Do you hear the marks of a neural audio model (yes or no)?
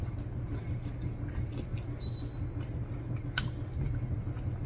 no